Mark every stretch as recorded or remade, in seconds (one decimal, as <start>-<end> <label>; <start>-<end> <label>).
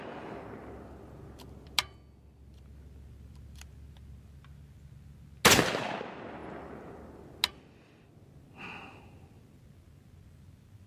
0.0-10.9 recorded